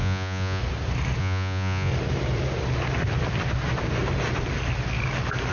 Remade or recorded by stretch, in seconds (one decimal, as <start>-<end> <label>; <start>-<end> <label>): 0.0-0.6 remade; 0.6-1.2 recorded; 1.2-1.9 remade; 1.9-5.5 recorded